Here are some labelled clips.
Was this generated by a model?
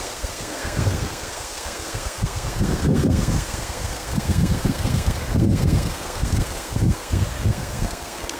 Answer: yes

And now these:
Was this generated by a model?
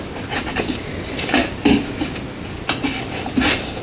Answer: no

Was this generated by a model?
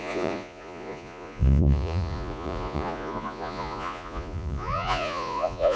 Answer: yes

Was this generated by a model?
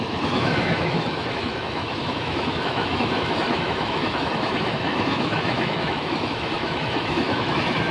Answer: yes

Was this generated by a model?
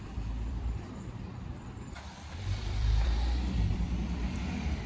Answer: yes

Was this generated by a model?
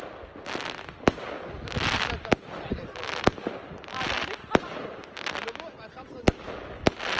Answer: no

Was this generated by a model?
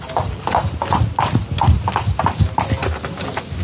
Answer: no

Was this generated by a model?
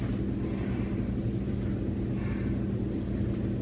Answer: no